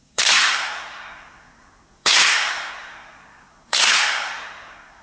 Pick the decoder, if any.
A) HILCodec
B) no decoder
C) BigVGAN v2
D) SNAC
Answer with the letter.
D